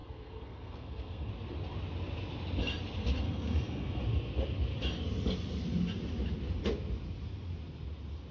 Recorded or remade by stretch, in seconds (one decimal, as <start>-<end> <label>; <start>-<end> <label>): 0.0-1.3 remade; 1.3-3.0 recorded; 3.0-4.0 remade; 4.0-8.3 recorded